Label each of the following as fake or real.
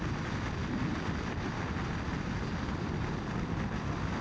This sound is real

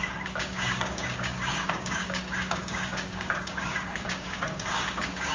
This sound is fake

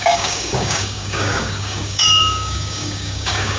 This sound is fake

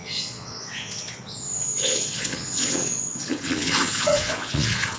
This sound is fake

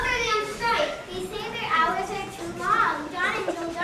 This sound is real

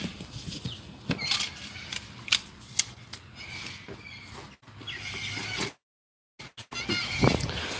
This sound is real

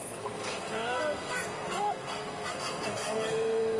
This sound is fake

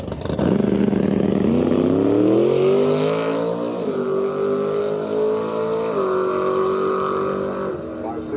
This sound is real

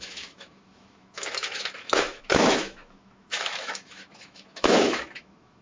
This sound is fake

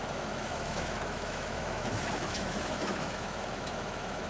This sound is fake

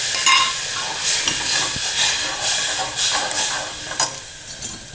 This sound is real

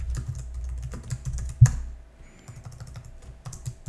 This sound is real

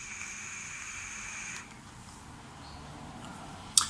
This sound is real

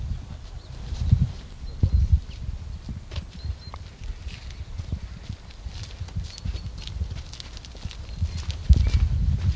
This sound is real